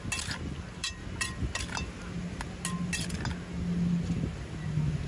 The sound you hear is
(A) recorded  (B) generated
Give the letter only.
A